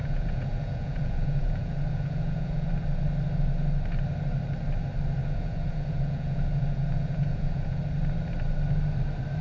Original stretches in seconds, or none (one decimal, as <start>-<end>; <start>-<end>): 2.7-5.2; 7.8-9.4